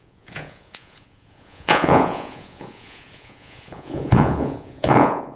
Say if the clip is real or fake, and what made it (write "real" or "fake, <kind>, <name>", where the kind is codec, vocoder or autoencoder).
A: fake, vocoder, Vocos